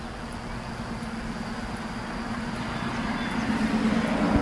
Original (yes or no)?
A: yes